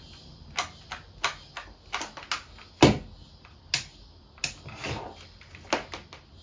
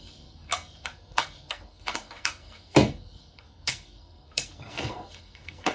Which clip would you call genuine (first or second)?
first